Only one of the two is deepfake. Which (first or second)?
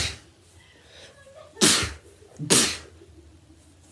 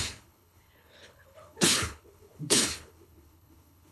second